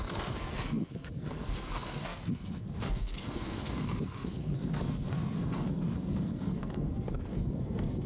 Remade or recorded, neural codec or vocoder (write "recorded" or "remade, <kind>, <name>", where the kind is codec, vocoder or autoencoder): remade, codec, SNAC